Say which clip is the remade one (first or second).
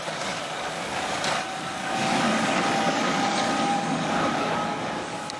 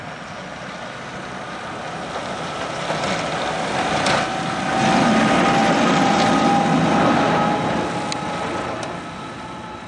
first